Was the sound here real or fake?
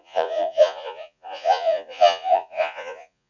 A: fake